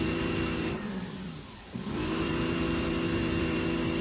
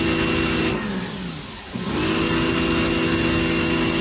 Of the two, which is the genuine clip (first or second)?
second